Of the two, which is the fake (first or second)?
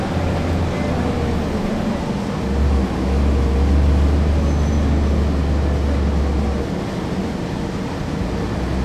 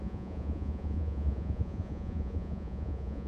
second